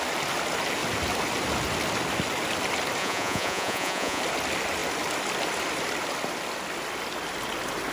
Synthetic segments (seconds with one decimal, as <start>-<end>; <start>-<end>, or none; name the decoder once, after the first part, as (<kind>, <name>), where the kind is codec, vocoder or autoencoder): 3.0-4.2 (vocoder, Vocos)